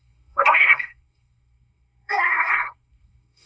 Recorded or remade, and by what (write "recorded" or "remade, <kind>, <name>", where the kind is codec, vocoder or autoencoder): remade, codec, SNAC